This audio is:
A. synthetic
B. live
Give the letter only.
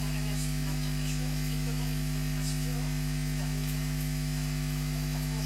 A